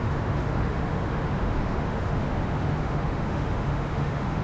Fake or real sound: fake